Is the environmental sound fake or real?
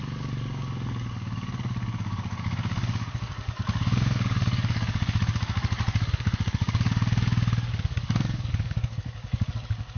fake